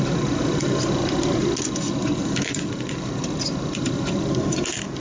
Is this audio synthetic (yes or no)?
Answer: no